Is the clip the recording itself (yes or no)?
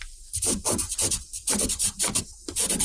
yes